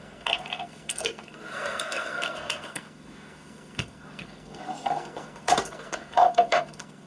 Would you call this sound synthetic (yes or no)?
yes